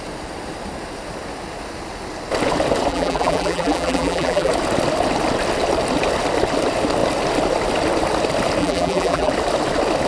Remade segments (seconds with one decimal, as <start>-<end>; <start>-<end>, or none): 2.9-4.5; 8.6-9.3